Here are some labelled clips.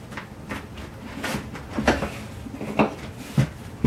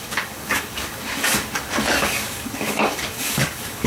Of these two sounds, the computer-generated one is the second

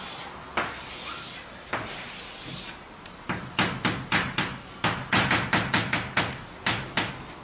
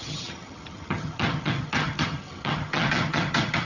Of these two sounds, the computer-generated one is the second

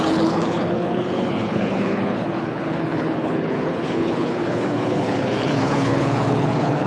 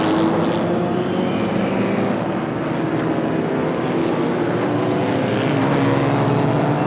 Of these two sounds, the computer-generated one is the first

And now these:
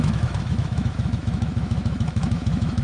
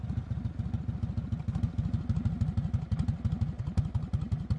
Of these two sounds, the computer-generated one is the first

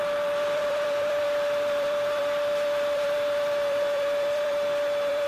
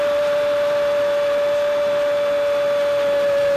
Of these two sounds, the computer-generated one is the first